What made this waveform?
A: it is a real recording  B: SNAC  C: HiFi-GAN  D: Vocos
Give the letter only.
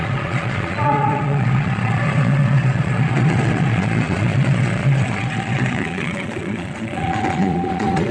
D